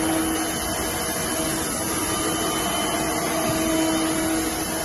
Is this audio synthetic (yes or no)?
no